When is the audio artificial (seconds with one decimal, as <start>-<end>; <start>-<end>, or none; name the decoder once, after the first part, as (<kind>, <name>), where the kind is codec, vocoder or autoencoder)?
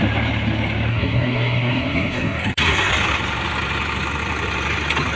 0.9-2.9 (codec, SNAC)